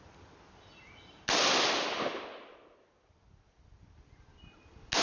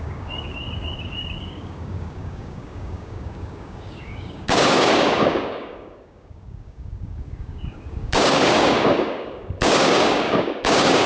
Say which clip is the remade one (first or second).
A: second